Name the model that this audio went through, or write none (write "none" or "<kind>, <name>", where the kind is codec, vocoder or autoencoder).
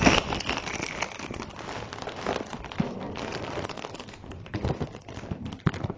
vocoder, BigVGAN v2